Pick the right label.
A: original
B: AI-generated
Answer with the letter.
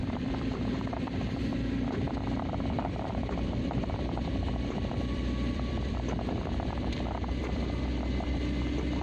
B